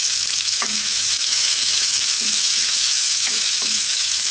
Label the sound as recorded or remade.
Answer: remade